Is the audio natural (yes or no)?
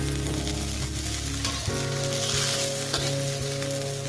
yes